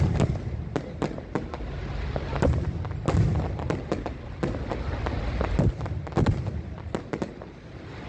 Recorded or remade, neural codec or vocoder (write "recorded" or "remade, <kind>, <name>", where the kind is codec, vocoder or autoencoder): recorded